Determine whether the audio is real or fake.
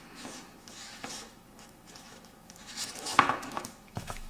fake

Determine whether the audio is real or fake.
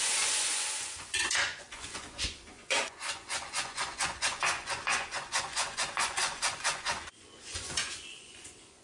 fake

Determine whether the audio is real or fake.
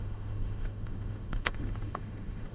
fake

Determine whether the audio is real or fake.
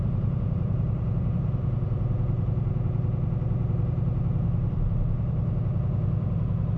fake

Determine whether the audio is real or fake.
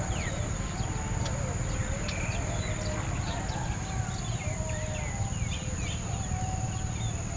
real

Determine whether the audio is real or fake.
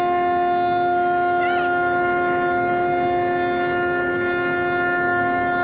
real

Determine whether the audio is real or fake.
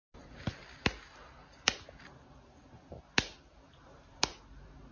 real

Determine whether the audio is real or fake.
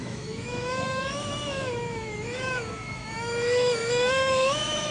fake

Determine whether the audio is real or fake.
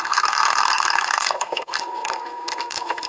fake